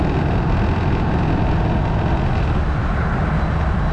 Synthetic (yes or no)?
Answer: no